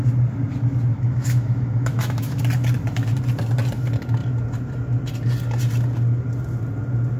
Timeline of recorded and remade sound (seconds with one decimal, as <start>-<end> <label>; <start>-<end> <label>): 0.0-0.9 recorded; 0.9-2.4 remade; 2.4-7.2 recorded